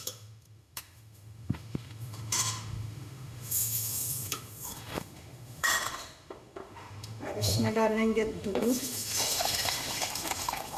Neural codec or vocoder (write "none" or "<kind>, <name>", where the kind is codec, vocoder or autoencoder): autoencoder, DAC-VAE